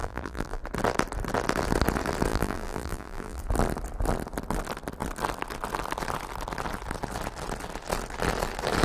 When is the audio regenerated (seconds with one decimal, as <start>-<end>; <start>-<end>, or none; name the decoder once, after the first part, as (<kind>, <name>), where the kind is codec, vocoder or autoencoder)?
0.0-0.6 (vocoder, BigVGAN v2); 2.3-3.4